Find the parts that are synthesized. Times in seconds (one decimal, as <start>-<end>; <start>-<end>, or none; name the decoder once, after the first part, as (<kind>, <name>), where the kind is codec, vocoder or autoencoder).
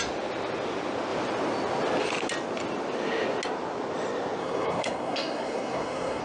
4.4-6.2 (codec, SNAC)